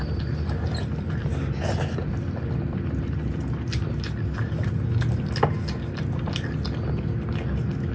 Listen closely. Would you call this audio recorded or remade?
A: recorded